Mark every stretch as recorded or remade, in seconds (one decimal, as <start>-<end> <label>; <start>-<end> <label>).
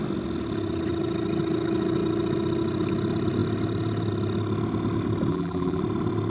0.0-5.3 recorded; 5.3-5.8 remade; 5.8-6.3 recorded